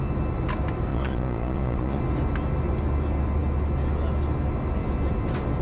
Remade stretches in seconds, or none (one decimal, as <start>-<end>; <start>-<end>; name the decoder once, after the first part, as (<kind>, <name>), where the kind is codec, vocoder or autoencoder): 0.9-2.0 (vocoder, Vocos)